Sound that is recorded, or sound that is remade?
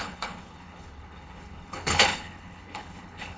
remade